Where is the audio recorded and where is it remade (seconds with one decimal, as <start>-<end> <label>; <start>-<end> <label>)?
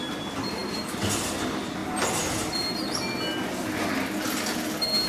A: 0.0-5.1 recorded